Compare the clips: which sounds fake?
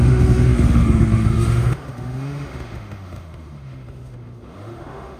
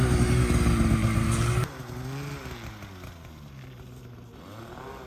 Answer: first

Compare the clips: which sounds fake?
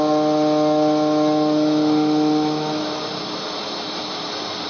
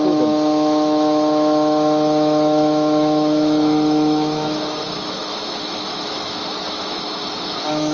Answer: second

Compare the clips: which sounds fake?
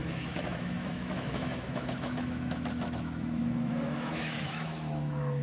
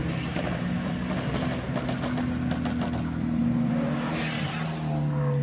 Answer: first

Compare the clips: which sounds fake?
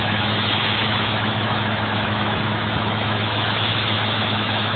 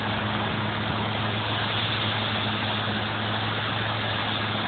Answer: first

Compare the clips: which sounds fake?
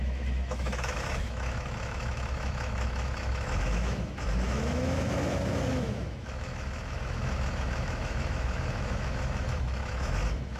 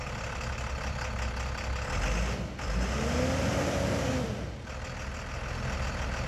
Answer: first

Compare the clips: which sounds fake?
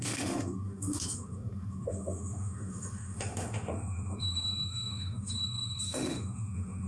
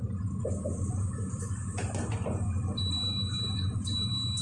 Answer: first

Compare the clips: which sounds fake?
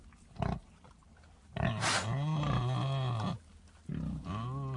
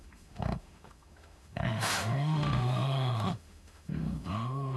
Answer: second